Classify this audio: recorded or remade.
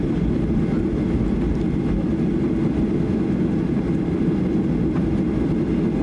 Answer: recorded